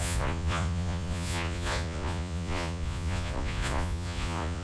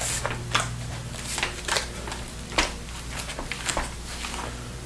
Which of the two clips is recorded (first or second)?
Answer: second